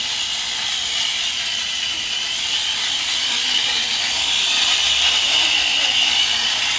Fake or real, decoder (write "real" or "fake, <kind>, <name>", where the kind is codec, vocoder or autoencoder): real